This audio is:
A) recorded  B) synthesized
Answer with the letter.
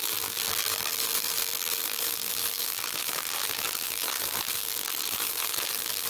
B